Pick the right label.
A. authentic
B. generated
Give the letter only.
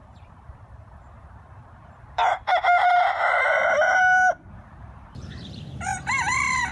B